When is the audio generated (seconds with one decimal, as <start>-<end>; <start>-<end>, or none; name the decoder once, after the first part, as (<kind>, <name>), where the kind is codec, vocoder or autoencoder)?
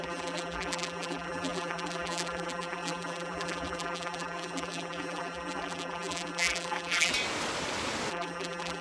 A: 0.0-7.1 (vocoder, BigVGAN v2); 8.1-8.8